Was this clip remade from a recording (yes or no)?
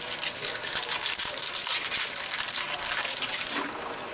no